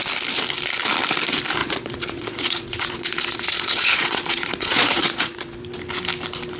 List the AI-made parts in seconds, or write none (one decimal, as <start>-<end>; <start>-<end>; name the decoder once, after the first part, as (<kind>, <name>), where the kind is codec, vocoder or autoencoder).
1.6-5.6 (vocoder, Vocos)